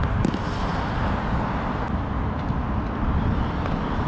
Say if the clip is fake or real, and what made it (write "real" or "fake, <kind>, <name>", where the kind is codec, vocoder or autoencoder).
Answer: real